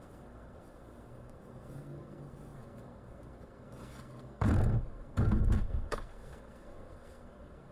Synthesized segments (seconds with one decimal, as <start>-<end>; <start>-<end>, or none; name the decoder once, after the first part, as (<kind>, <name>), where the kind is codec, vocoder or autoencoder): 0.0-7.7 (codec, SNAC)